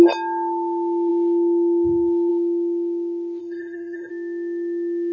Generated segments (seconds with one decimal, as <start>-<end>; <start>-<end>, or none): 3.4-4.1